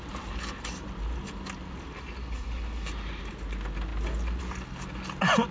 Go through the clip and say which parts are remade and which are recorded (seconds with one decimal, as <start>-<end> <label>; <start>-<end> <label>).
0.0-2.2 recorded; 2.2-2.9 remade; 2.9-5.5 recorded